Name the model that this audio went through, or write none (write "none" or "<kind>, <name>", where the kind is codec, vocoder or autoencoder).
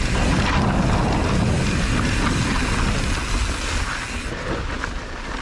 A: none